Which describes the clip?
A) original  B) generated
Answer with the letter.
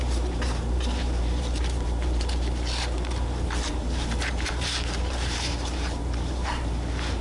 B